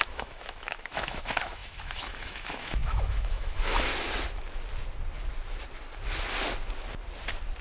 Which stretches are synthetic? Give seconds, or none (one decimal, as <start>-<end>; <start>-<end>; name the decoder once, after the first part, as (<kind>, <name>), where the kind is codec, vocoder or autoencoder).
0.0-3.9 (autoencoder, DAC-VAE)